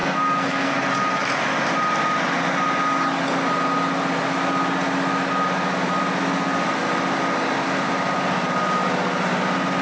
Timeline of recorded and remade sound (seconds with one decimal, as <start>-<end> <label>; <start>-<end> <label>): 0.0-0.7 remade; 0.7-9.8 recorded